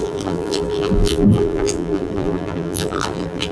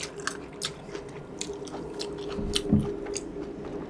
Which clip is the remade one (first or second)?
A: first